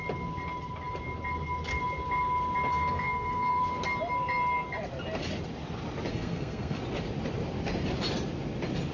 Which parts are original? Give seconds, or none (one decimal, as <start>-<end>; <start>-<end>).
0.0-2.7; 3.6-6.1; 6.8-8.9